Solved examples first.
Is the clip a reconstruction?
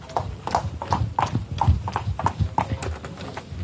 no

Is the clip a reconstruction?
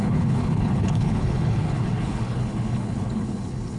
yes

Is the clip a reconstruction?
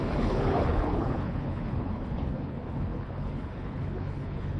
yes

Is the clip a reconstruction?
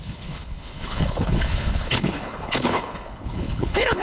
yes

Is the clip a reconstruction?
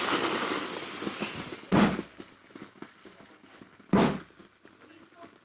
no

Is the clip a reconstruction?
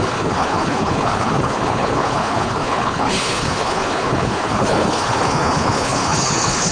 yes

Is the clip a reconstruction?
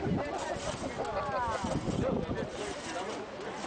no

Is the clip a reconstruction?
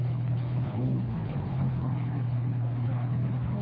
yes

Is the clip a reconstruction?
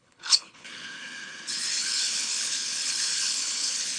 yes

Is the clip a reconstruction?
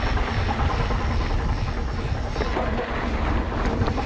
no